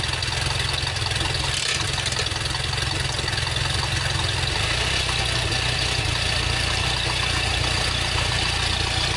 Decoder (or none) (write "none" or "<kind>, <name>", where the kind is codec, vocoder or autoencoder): none